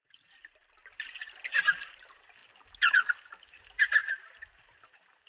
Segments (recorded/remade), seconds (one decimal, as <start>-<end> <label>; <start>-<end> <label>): 0.0-0.6 remade; 0.6-1.6 recorded; 1.6-2.4 remade; 2.4-3.4 recorded; 3.4-5.3 remade